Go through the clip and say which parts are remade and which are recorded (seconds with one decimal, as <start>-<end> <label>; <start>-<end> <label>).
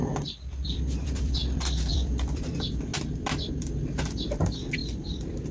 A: 0.0-2.9 remade; 2.9-3.5 recorded; 3.5-5.5 remade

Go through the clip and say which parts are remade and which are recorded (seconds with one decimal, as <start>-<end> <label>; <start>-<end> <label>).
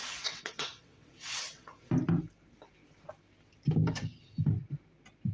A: 0.0-1.9 remade; 1.9-5.3 recorded